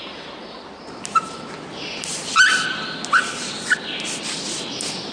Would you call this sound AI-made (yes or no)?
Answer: no